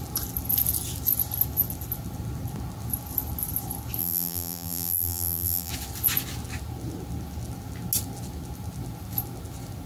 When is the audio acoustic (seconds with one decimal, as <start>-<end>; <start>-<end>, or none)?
0.0-4.0; 5.7-9.9